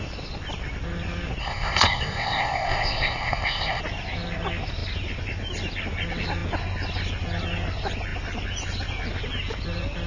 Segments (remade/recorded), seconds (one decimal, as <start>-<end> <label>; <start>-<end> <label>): 0.0-1.4 recorded; 1.4-3.8 remade; 3.8-10.1 recorded